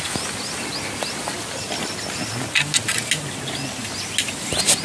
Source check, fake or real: real